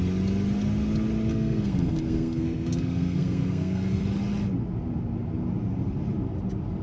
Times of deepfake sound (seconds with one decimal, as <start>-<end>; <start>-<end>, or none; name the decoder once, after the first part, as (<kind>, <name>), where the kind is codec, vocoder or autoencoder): 1.3-4.0 (codec, SNAC)